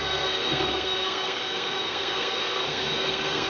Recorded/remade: remade